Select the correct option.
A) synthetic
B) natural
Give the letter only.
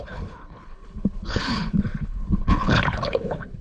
A